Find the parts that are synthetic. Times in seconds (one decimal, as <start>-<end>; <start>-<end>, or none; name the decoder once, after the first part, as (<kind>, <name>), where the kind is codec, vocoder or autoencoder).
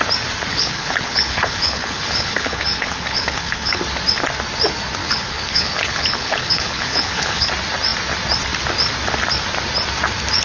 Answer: 0.5-3.8 (codec, HILCodec); 5.0-7.5